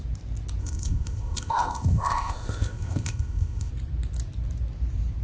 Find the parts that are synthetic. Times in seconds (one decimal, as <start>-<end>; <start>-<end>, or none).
0.6-3.7